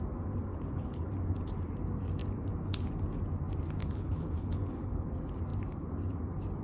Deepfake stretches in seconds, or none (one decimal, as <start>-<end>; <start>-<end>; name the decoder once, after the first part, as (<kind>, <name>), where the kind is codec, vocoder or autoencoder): 0.5-1.1 (codec, HILCodec); 3.8-5.1

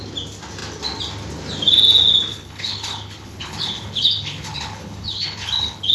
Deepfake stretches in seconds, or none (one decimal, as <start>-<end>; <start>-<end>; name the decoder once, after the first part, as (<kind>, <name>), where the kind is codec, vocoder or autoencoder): 2.3-5.9 (codec, HILCodec)